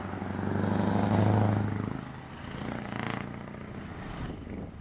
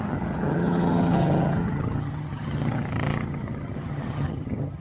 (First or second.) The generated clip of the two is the second